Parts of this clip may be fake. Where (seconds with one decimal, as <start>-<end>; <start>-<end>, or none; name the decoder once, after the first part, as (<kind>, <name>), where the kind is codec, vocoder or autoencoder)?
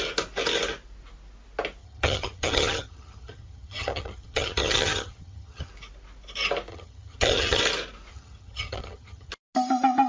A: 1.8-5.7 (vocoder, HiFi-GAN); 6.7-7.6; 8.1-9.3